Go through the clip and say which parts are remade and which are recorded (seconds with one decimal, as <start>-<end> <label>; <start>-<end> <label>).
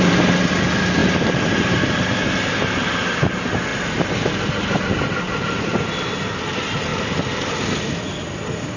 0.0-1.0 recorded; 1.0-1.7 remade; 1.7-3.7 recorded; 3.7-5.6 remade; 5.6-6.9 recorded; 6.9-7.8 remade; 7.8-8.8 recorded